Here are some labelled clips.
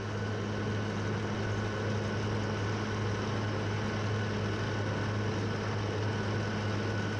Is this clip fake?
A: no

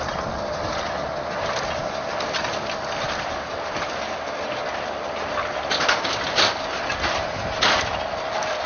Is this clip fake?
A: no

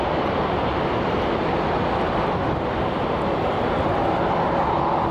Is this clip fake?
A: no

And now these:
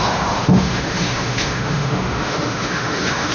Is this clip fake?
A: yes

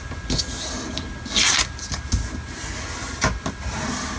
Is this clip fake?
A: no